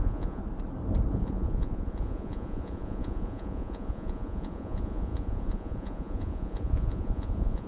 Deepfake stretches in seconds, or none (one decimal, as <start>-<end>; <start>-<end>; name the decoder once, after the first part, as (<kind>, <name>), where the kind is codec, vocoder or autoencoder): 0.0-0.4 (vocoder, Vocos); 1.1-7.7